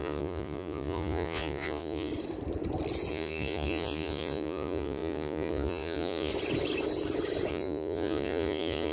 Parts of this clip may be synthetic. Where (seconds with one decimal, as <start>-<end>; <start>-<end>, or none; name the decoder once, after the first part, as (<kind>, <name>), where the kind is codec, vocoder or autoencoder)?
0.0-2.1 (vocoder, Vocos); 3.1-6.3; 7.5-8.9